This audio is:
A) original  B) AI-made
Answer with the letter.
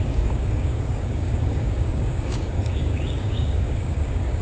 B